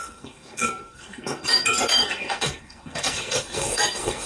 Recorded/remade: remade